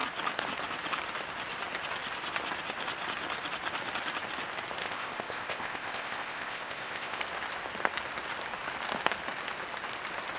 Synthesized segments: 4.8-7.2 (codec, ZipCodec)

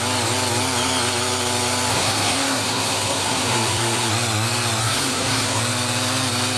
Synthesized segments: 1.9-4.1 (codec, SNAC); 4.8-5.6

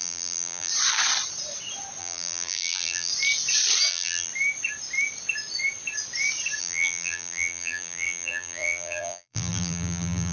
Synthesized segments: 0.0-0.7 (vocoder, BigVGAN v2); 2.0-3.1; 3.9-4.3; 6.6-10.3

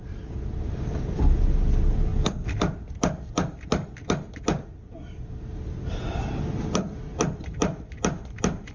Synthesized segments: none

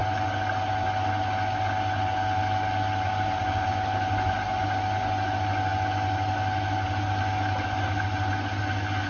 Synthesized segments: none

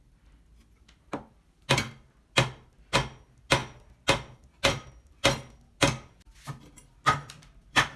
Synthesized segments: none

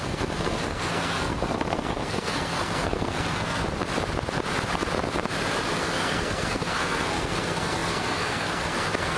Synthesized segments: 0.0-3.6 (codec, SNAC); 5.8-9.2